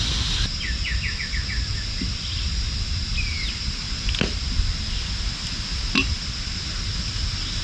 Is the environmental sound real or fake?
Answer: real